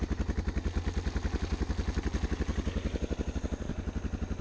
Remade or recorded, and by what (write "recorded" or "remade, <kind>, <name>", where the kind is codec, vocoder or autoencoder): recorded